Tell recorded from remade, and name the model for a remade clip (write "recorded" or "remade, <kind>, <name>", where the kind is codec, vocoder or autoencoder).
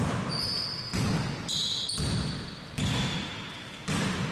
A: recorded